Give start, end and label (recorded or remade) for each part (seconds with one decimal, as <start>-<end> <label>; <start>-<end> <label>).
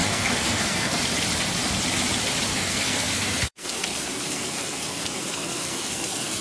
0.0-1.0 remade; 1.0-2.5 recorded; 2.5-6.4 remade